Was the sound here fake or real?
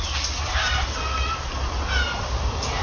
real